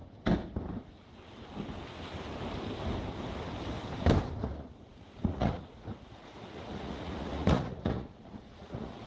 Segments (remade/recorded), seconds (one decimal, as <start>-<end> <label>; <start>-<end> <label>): 0.0-4.4 recorded; 4.4-9.1 remade